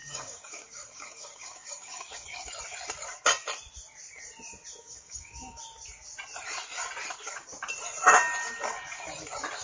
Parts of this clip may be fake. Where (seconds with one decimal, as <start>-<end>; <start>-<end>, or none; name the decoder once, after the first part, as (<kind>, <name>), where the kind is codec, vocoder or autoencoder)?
0.0-2.5 (codec, DAC); 4.8-5.6